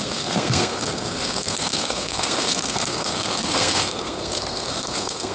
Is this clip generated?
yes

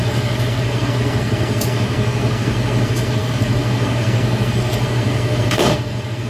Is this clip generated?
yes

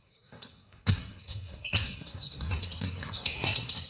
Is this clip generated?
yes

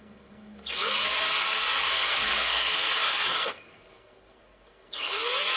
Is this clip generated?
yes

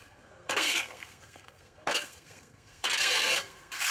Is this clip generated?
yes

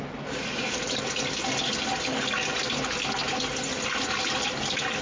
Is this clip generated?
no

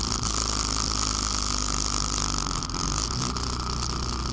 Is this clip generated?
no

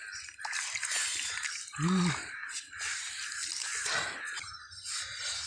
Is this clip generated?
no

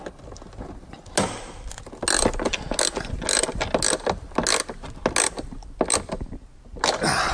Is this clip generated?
no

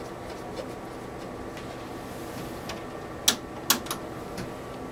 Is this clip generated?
no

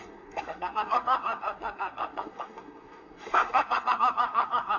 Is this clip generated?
yes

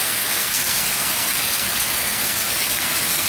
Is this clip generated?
yes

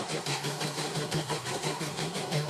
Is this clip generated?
yes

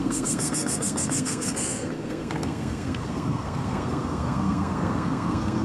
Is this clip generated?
yes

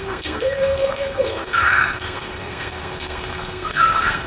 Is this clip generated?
yes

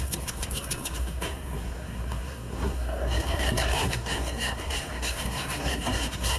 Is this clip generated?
yes